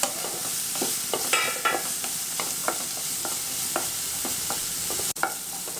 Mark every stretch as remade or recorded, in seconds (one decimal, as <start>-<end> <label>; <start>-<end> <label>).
0.0-2.6 remade; 2.6-5.1 recorded; 5.1-5.8 remade